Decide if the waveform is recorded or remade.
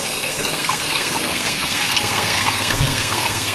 remade